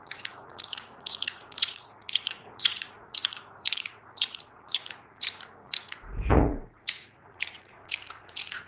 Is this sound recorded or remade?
remade